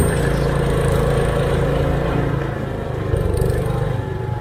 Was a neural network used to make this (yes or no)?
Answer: no